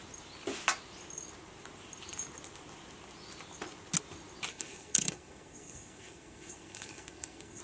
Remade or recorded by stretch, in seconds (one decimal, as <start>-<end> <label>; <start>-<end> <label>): 0.0-4.5 recorded; 4.5-7.6 remade